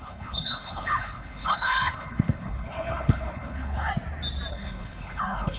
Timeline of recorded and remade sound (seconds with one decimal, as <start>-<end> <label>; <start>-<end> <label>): 0.0-3.9 remade; 3.9-4.5 recorded; 4.5-5.6 remade